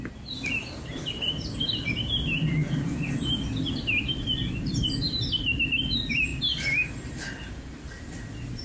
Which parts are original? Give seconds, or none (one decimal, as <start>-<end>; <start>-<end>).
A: none